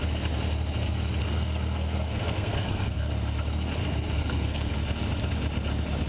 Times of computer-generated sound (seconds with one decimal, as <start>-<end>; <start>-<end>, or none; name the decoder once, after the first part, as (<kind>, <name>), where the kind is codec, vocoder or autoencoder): 1.2-3.1 (codec, SNAC); 3.8-4.7